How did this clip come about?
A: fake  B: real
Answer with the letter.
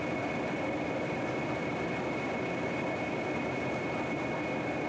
B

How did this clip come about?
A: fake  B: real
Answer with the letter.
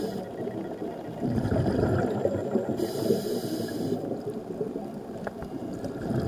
B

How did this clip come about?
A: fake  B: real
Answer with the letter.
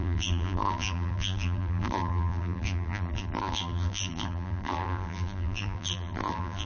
A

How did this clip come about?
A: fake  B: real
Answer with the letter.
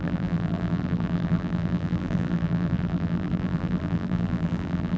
A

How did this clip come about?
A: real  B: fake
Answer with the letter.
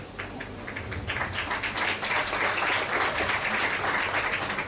A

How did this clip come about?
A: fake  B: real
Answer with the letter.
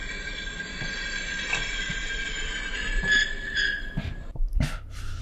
A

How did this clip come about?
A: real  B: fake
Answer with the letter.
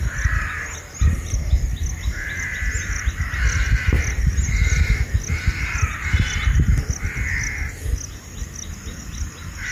A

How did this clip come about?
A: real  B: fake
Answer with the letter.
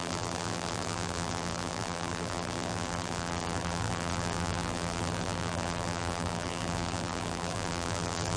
B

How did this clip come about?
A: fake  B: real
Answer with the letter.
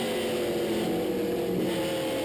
B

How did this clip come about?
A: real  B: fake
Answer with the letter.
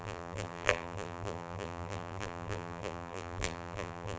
B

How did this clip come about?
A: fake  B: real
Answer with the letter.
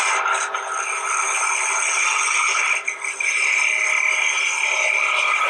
B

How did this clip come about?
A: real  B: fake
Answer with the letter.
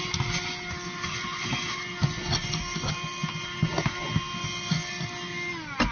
A